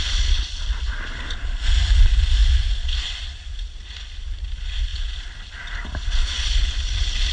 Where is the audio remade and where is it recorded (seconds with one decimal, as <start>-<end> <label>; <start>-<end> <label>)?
0.0-7.3 recorded